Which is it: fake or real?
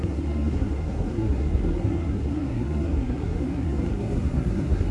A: fake